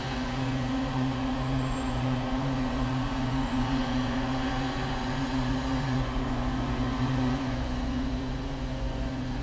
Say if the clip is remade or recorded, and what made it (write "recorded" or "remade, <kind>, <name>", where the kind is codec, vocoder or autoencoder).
remade, vocoder, Vocos